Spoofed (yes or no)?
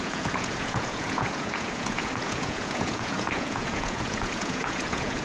yes